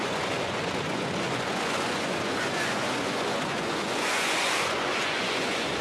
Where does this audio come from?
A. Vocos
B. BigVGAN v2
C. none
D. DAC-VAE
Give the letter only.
A